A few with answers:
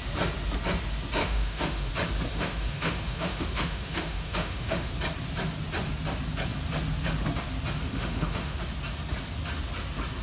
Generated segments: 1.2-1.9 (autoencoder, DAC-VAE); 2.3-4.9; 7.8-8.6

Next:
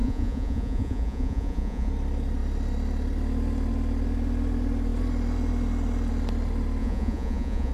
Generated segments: 0.0-1.9 (vocoder, Vocos); 6.8-7.7

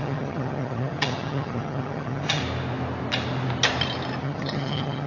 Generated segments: 0.0-2.4 (vocoder, HiFi-GAN); 4.2-5.1

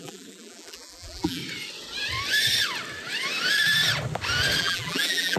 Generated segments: 0.0-1.4 (vocoder, BigVGAN v2); 4.6-5.4

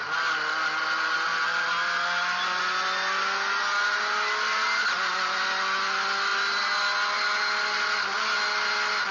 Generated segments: none

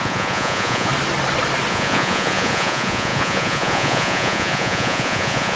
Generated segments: 0.0-0.9 (vocoder, Vocos); 1.7-5.6

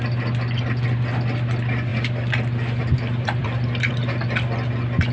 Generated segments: 1.9-3.9 (vocoder, BigVGAN v2)